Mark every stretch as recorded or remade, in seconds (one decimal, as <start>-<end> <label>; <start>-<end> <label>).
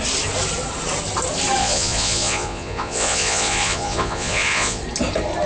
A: 0.0-1.6 recorded; 1.6-4.8 remade; 4.8-5.5 recorded